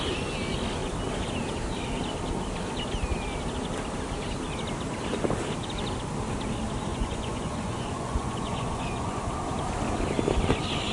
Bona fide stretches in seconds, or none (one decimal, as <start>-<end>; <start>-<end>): 0.0-6.9; 9.2-10.9

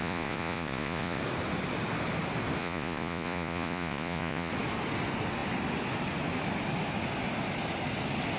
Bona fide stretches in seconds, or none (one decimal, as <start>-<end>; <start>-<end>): 1.2-2.6; 4.5-8.4

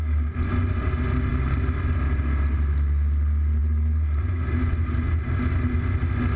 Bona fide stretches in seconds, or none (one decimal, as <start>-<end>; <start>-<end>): 0.0-6.4

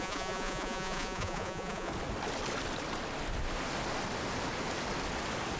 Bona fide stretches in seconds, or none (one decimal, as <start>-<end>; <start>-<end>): 1.9-5.6

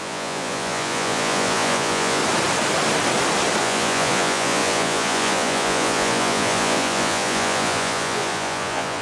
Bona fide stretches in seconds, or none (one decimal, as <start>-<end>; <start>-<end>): 2.2-3.6

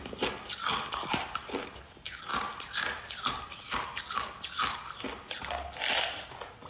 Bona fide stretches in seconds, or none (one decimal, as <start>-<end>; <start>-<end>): 0.0-6.7